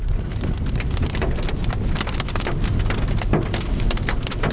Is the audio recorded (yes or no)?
yes